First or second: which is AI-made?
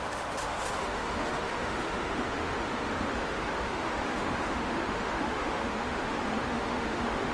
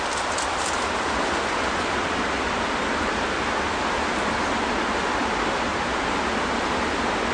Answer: first